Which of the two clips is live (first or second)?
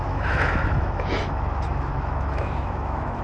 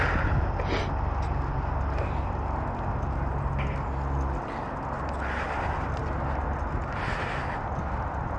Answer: second